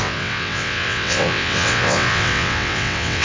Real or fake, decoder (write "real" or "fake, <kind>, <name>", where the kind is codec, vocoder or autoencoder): fake, vocoder, WaveNeXt